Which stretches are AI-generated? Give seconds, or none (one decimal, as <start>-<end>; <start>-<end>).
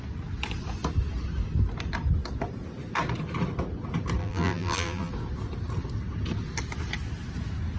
4.2-5.1